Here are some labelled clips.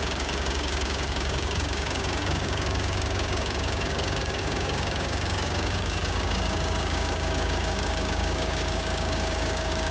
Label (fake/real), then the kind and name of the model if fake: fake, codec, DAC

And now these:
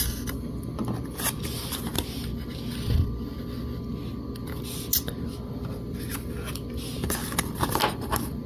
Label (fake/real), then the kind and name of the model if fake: real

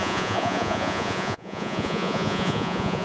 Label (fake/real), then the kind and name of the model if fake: fake, vocoder, Vocos